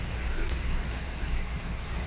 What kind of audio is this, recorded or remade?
remade